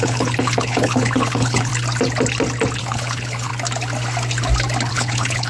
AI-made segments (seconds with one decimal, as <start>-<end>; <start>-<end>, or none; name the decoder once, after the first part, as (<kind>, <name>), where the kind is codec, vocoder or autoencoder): 0.0-1.7 (codec, HILCodec); 2.8-3.5; 4.9-5.5